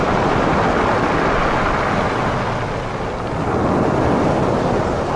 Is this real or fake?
real